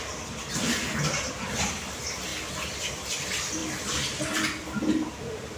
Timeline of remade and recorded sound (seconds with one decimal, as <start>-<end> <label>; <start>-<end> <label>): 0.0-3.6 recorded; 3.6-4.2 remade; 4.2-5.6 recorded